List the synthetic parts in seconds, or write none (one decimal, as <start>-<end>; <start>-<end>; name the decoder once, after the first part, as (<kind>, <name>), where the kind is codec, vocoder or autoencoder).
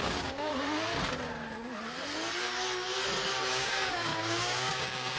0.0-0.5 (codec, DAC); 3.5-5.2